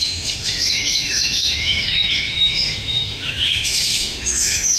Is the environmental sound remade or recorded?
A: remade